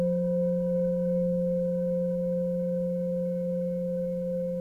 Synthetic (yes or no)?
yes